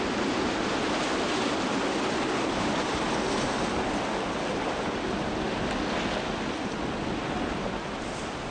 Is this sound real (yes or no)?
yes